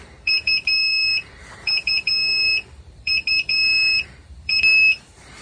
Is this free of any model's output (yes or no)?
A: no